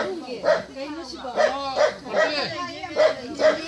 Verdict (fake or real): real